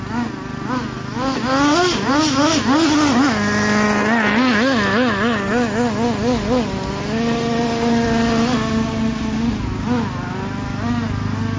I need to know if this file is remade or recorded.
recorded